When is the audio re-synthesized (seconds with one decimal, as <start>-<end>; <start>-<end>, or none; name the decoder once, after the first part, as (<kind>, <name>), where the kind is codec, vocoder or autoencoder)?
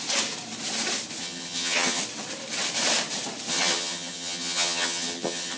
1.2-2.0 (vocoder, HiFi-GAN); 3.5-5.6